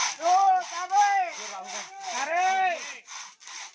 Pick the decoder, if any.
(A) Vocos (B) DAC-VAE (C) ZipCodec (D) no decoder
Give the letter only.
D